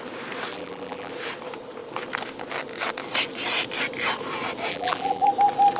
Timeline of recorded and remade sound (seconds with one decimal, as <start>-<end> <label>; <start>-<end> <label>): 0.0-0.5 recorded; 0.5-1.1 remade; 1.1-4.7 recorded; 4.7-5.3 remade; 5.3-5.8 recorded